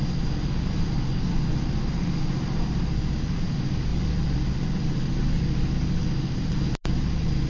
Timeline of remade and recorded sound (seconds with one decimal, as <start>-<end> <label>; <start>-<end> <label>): 0.0-7.5 recorded